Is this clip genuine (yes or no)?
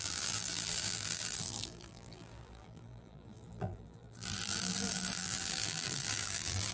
no